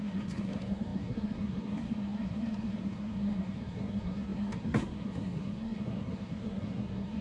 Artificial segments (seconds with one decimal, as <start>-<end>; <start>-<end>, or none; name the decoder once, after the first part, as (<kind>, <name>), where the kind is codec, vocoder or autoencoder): 0.0-7.2 (codec, SNAC)